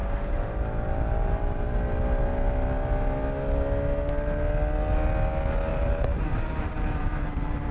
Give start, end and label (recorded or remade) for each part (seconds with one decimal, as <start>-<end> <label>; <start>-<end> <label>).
0.0-5.7 recorded; 5.7-7.7 remade